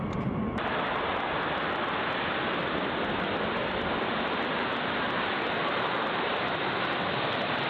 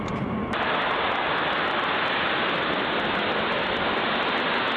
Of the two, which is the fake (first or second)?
first